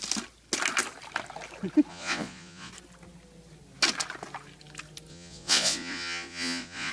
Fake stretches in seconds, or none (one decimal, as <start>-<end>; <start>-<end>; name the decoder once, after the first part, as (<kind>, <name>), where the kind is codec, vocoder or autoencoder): 1.9-2.7 (vocoder, Vocos); 5.1-6.9